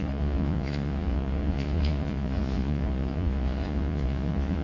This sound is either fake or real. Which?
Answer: fake